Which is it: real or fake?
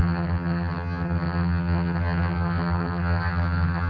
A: fake